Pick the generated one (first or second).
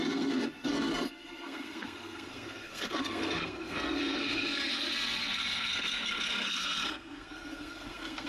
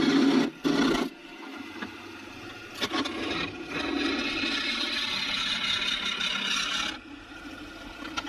first